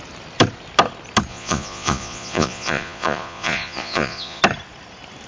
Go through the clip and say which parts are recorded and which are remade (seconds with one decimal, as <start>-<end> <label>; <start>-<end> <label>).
0.0-1.3 recorded; 1.3-4.4 remade; 4.4-5.3 recorded